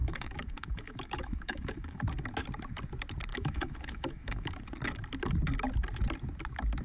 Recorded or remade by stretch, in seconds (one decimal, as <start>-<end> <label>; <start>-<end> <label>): 0.0-2.0 remade; 2.0-3.3 recorded; 3.3-4.5 remade; 4.5-6.8 recorded